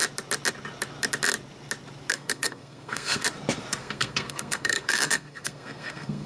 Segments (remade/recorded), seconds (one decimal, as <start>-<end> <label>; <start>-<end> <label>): 0.0-2.1 recorded; 2.1-3.2 remade; 3.2-3.8 recorded; 3.8-6.3 remade